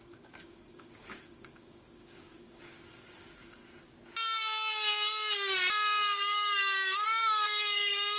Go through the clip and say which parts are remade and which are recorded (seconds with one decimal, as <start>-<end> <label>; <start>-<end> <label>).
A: 0.0-3.6 remade; 3.6-6.2 recorded; 6.2-8.2 remade